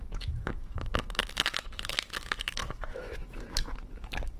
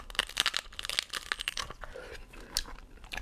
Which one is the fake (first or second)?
first